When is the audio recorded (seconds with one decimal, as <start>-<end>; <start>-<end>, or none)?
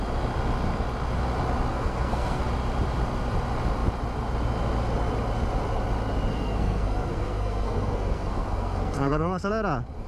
0.0-1.7; 2.4-6.3; 9.5-10.1